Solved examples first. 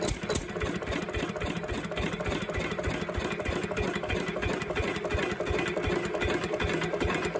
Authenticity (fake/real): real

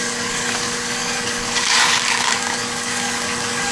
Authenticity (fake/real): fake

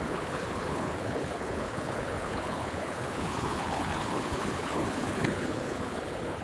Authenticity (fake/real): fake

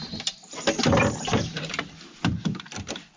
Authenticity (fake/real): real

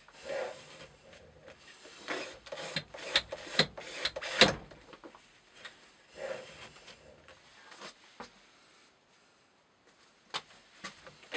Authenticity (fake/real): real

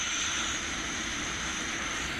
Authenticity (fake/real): fake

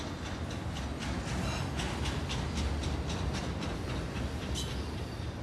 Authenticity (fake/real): real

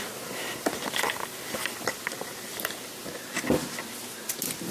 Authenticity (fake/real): real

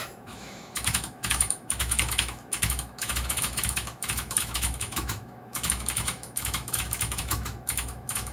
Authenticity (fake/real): fake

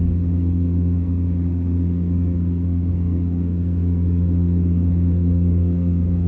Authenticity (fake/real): fake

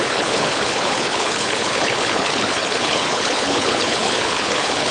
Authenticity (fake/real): fake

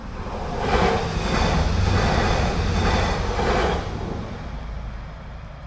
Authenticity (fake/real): real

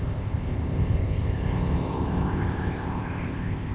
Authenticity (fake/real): fake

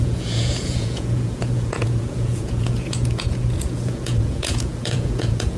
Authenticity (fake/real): fake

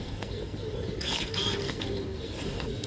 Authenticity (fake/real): fake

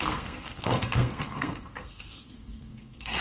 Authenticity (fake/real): fake